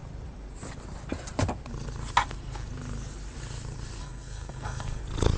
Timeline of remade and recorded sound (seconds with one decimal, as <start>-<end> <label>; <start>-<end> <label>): 0.0-4.0 recorded; 4.0-5.0 remade; 5.0-5.4 recorded